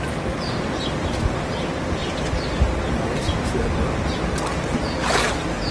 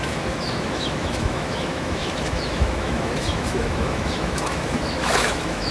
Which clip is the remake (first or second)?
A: second